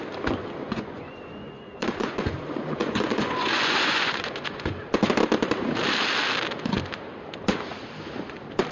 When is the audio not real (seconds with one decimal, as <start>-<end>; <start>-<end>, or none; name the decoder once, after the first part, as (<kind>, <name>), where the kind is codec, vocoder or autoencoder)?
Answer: 0.6-4.7 (vocoder, Vocos)